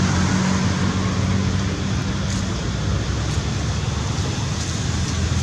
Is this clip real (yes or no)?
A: yes